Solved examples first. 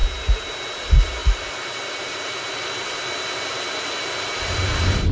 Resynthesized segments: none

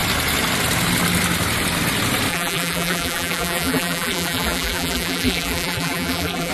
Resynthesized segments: 2.3-6.5

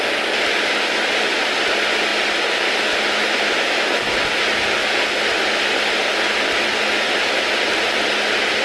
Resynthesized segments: none

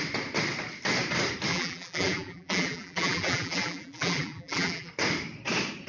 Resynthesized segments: 1.5-4.9

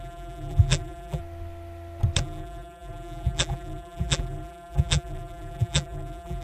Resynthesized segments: 0.0-1.2; 2.2-6.4

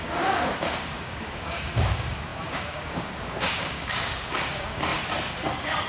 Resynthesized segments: 0.0-4.9